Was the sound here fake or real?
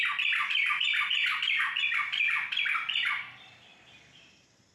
real